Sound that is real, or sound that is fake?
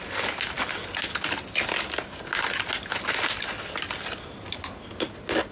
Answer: real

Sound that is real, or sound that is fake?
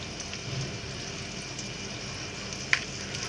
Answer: real